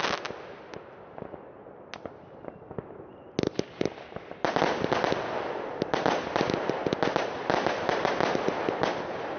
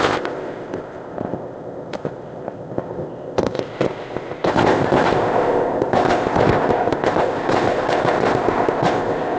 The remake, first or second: second